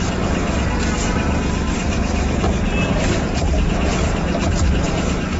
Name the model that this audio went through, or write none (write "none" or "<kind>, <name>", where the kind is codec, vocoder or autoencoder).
vocoder, BigVGAN v2